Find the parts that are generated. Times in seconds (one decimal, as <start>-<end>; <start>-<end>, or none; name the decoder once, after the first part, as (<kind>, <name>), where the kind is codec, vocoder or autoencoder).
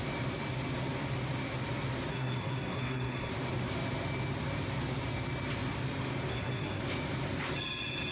2.1-3.3 (codec, SNAC); 6.3-6.8